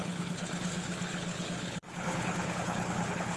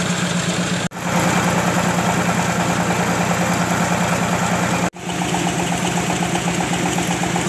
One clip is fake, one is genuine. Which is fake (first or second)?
first